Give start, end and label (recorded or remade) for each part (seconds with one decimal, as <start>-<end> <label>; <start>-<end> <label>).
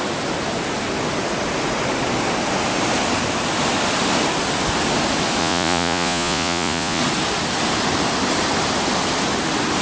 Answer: 0.0-5.4 recorded; 5.4-7.0 remade; 7.0-9.8 recorded